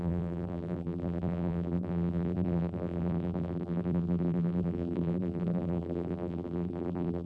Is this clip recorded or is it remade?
remade